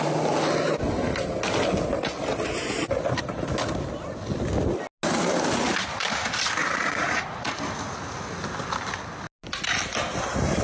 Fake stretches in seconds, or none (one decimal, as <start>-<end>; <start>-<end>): 6.6-7.5